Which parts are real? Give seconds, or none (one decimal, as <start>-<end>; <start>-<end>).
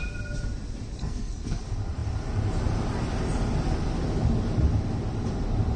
0.0-1.0; 1.6-5.8